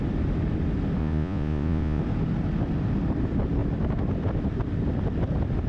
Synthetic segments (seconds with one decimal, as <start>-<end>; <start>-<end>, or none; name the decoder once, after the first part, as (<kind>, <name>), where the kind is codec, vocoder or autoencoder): 1.0-2.0 (vocoder, Vocos)